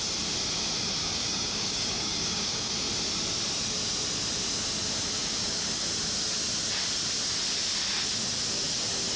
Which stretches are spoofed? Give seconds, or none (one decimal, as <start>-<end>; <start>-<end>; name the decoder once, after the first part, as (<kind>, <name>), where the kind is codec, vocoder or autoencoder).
1.0-2.7 (codec, DAC); 5.2-5.8